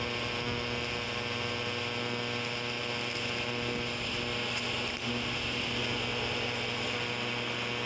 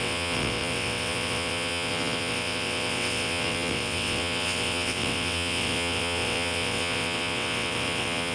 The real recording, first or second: first